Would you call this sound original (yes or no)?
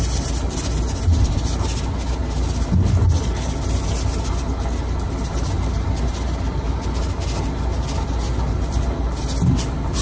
yes